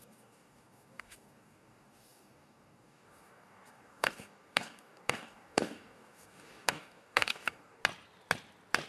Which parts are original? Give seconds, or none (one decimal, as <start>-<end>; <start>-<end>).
7.8-8.9